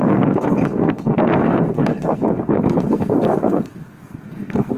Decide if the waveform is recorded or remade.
remade